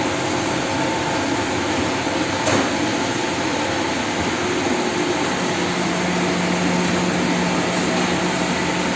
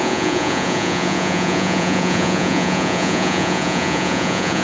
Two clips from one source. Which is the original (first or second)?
first